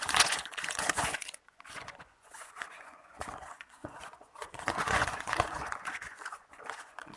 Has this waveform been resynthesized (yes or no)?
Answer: yes